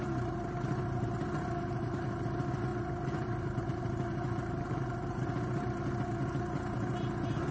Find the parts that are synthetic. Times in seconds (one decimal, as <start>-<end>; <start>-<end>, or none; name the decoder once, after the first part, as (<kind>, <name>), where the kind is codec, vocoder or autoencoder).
none